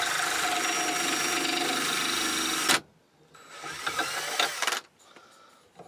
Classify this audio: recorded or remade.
recorded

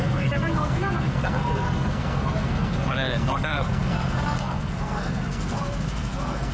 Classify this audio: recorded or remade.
remade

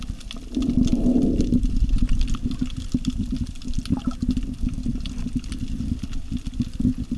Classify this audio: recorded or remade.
recorded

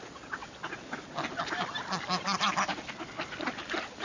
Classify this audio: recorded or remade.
recorded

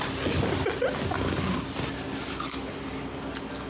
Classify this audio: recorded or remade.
recorded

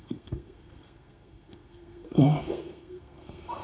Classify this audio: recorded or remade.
remade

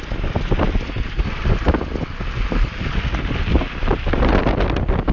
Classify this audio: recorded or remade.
recorded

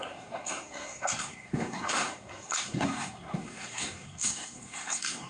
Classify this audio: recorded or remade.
remade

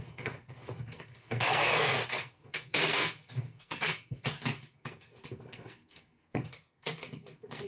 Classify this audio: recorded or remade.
remade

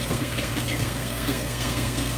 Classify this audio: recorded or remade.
remade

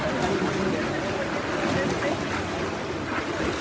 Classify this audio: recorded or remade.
recorded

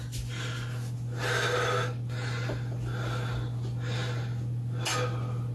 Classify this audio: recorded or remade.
recorded